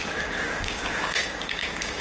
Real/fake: fake